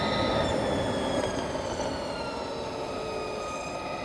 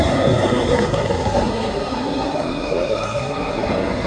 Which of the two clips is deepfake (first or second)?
second